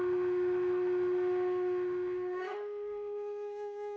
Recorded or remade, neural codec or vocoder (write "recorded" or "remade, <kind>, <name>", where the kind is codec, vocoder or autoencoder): remade, autoencoder, DAC-VAE